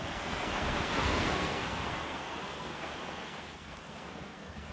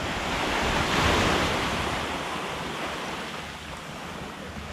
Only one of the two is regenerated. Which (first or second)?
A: first